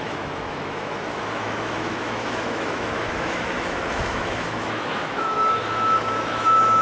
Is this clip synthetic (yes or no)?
yes